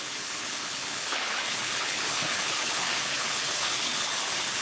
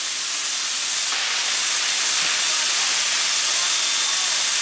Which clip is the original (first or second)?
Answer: second